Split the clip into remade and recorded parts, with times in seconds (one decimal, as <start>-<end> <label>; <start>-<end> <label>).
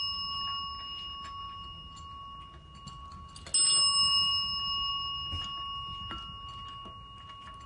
0.0-7.7 recorded